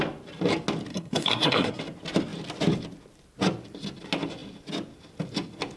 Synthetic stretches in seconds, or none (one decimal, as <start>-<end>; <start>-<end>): 0.9-1.8